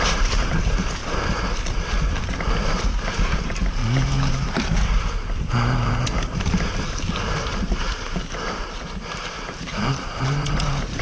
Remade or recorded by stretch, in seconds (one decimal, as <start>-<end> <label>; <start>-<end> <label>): 0.0-3.8 remade; 3.8-4.3 recorded; 4.3-11.0 remade